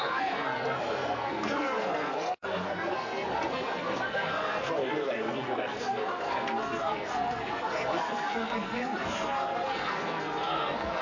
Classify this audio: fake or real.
fake